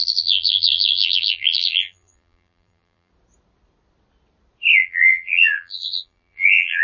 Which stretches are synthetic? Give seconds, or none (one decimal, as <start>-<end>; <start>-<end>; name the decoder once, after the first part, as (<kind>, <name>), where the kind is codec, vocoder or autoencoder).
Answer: 0.0-3.1 (vocoder, BigVGAN v2); 4.7-6.8